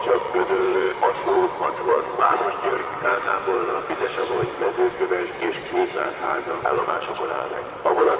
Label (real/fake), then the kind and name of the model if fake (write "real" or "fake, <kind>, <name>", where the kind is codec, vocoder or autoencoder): fake, vocoder, WaveNeXt